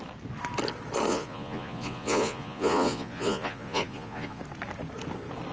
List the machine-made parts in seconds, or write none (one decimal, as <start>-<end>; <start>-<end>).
1.1-4.4